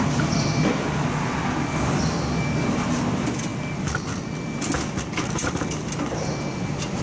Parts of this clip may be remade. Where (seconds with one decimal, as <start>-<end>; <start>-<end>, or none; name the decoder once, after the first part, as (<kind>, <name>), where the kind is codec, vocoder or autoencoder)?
none

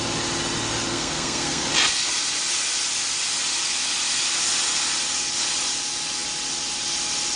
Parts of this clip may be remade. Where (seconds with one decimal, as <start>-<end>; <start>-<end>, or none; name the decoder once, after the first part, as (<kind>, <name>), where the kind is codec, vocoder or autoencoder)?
0.9-1.7 (codec, SNAC)

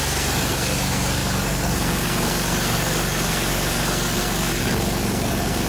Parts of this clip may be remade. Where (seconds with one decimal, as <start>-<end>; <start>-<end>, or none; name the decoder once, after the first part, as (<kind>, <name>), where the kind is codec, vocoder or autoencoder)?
0.0-5.7 (codec, SNAC)

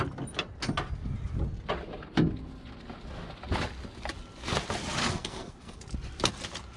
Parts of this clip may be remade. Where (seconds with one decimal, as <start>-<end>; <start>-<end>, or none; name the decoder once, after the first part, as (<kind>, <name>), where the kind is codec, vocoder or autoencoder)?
5.0-5.8 (codec, SNAC)